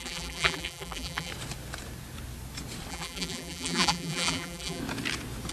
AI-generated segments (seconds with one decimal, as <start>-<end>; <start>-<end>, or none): 0.0-1.3; 2.9-4.8